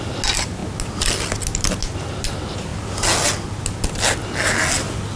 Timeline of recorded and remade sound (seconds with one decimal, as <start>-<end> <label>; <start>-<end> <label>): 0.0-5.2 recorded